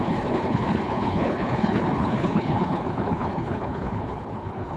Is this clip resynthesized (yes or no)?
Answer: yes